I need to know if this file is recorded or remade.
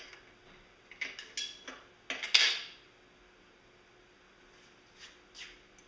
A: recorded